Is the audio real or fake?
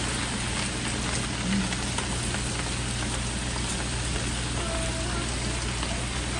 real